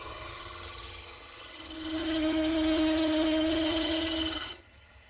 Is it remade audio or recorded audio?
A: remade